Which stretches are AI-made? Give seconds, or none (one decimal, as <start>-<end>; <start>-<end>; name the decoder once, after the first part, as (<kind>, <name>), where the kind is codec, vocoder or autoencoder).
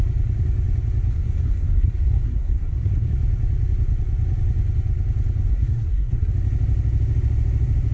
1.1-3.1 (codec, SNAC); 5.5-6.3